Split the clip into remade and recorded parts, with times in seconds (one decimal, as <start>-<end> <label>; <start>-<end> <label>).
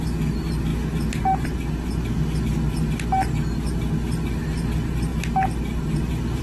0.0-6.4 recorded